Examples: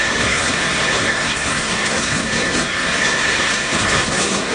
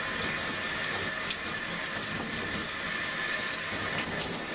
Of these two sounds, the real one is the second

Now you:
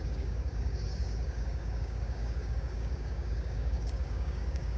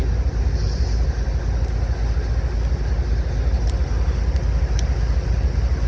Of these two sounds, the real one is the second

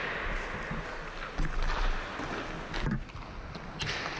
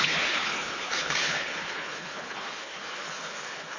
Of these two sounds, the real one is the first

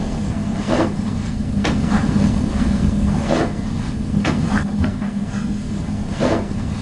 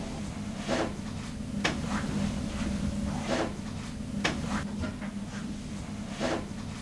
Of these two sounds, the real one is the second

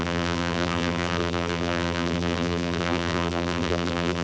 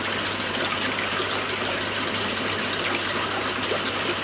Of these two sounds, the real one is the second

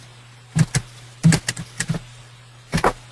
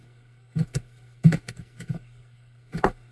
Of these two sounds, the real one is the first